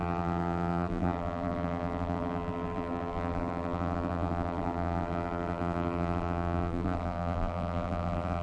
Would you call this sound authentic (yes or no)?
no